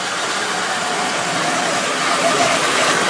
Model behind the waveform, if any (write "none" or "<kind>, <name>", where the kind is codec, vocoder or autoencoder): none